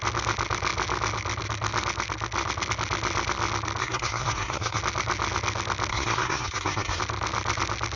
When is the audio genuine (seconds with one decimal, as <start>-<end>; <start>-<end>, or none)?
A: 0.0-3.8; 4.8-5.9; 7.0-8.0